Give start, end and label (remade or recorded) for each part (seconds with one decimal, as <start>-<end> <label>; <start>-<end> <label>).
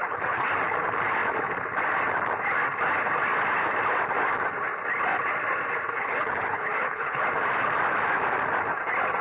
0.0-0.5 remade; 0.5-6.0 recorded; 6.0-7.2 remade; 7.2-9.2 recorded